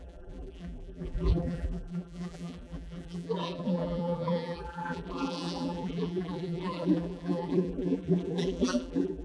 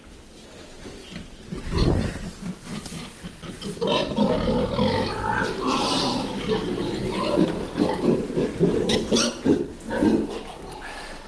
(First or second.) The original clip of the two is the second